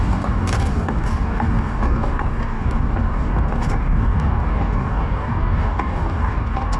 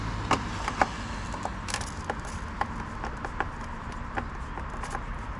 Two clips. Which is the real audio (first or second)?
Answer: second